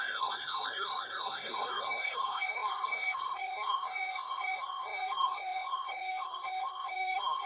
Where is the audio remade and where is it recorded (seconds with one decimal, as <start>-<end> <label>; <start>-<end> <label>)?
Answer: 0.0-7.5 remade

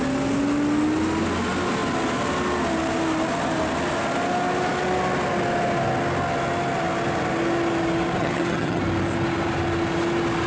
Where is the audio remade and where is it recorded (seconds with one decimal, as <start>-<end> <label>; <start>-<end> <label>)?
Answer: 0.0-8.2 recorded; 8.2-8.8 remade; 8.8-10.5 recorded

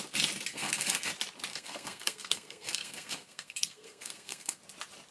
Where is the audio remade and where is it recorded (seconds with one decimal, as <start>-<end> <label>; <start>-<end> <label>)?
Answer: 0.0-0.5 recorded; 0.5-1.1 remade; 1.1-1.5 recorded; 1.5-4.6 remade; 4.6-5.1 recorded

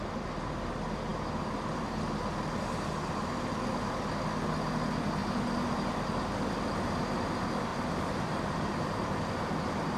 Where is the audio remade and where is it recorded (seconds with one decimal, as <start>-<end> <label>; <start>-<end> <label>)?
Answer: 0.0-7.7 recorded; 7.7-9.3 remade; 9.3-10.0 recorded

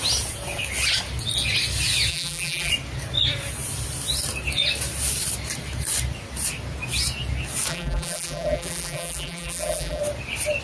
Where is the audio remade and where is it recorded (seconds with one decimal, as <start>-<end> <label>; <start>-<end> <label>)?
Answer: 0.0-2.1 recorded; 2.1-2.7 remade; 2.7-7.7 recorded; 7.7-10.0 remade; 10.0-10.6 recorded

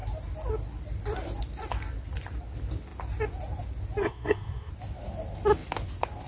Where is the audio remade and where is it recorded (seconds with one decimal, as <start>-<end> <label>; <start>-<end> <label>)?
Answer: 0.0-4.0 recorded; 4.0-4.7 remade; 4.7-6.3 recorded